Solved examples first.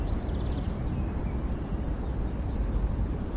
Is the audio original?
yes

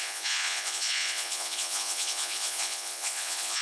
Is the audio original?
no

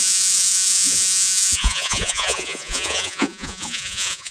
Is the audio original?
no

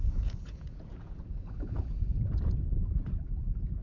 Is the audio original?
no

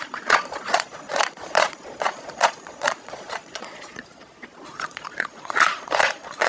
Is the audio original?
no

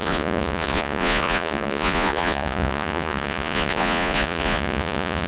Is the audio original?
no